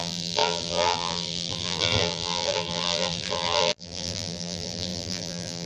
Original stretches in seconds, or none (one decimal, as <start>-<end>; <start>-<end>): none